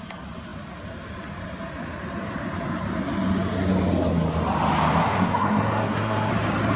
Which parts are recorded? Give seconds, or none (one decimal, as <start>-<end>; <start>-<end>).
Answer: 0.0-5.0; 6.3-6.8